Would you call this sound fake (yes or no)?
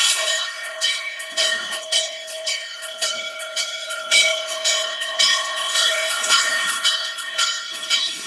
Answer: yes